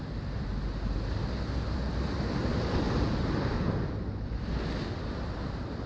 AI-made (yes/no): no